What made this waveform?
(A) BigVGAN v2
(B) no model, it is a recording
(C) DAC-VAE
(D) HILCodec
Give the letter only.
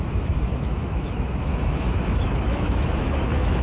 C